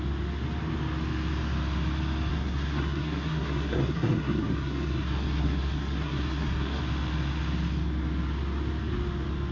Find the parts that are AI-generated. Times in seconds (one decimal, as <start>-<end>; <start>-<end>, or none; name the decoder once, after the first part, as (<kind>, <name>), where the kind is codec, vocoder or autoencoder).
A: 2.3-6.8 (codec, SNAC)